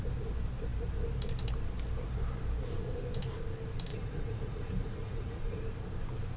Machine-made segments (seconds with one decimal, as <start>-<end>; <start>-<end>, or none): 3.9-5.6